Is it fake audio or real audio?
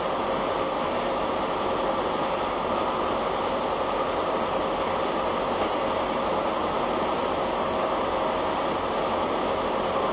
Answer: real